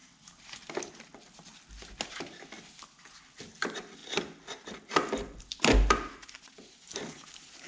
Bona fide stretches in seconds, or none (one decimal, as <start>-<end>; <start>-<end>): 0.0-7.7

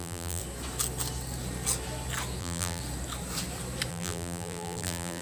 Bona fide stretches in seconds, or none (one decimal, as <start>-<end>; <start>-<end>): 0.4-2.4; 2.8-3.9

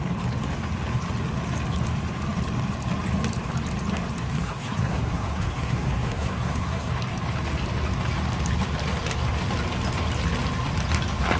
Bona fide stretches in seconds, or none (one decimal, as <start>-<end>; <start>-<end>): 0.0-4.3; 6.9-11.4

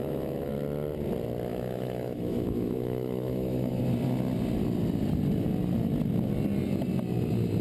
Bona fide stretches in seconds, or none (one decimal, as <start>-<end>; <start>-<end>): 0.5-1.5; 3.8-7.6

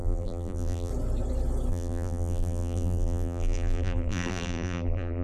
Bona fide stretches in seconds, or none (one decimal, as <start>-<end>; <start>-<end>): 0.9-1.7